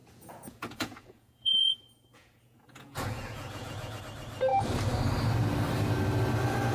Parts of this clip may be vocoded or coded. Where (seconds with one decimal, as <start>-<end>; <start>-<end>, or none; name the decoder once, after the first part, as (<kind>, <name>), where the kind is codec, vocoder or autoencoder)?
0.0-4.0 (vocoder, Vocos)